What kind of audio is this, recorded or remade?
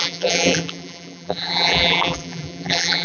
remade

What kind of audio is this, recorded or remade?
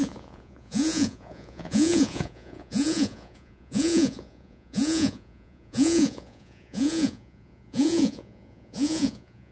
remade